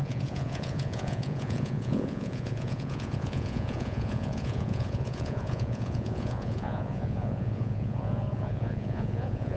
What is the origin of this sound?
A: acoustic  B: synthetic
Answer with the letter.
B